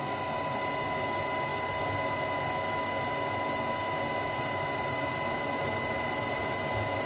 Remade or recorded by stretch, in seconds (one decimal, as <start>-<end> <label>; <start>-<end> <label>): 0.0-7.1 recorded